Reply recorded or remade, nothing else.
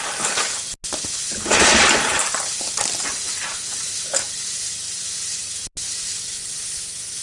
recorded